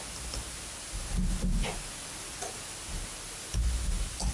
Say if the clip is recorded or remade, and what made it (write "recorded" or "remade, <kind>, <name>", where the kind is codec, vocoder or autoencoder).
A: recorded